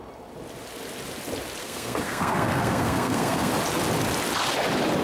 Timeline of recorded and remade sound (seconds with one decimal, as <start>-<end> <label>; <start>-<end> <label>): 0.0-1.6 recorded; 1.6-3.5 remade; 3.5-5.0 recorded